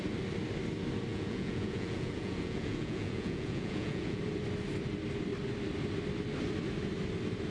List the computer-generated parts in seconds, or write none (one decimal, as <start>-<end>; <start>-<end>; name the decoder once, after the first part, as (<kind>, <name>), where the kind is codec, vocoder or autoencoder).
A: 1.1-4.2 (vocoder, Vocos)